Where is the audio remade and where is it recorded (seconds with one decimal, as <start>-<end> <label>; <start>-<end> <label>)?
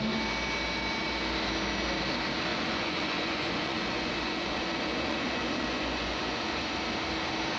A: 0.0-2.5 recorded; 2.5-6.7 remade; 6.7-7.6 recorded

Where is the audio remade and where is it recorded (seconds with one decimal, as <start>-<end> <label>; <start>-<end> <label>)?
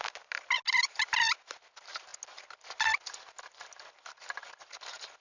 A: 0.0-5.2 recorded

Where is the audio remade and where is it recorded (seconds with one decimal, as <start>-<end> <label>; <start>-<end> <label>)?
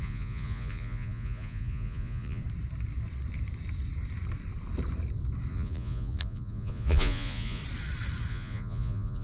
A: 0.0-2.4 remade; 2.4-5.5 recorded; 5.5-7.6 remade; 7.6-8.3 recorded; 8.3-9.2 remade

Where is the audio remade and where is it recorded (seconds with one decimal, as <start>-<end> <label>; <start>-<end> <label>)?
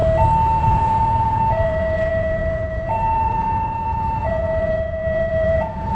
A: 0.0-0.6 recorded; 0.6-6.0 remade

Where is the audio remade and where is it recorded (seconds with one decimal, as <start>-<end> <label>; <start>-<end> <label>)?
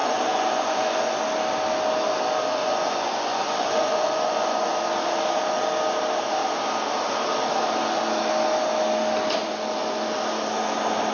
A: 0.0-1.2 remade; 1.2-2.6 recorded; 2.6-4.7 remade; 4.7-11.1 recorded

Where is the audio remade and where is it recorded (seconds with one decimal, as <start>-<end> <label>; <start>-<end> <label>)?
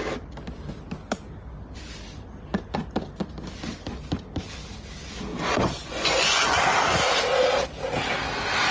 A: 0.0-5.3 recorded; 5.3-6.6 remade; 6.6-8.7 recorded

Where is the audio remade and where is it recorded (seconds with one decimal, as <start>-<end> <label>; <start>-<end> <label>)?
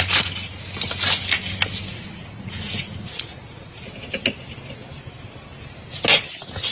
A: 0.0-1.9 recorded; 1.9-3.9 remade; 3.9-6.7 recorded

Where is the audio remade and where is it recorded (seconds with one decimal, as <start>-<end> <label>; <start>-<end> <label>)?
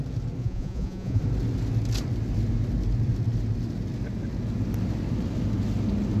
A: 0.0-0.4 recorded; 0.4-1.2 remade; 1.2-6.2 recorded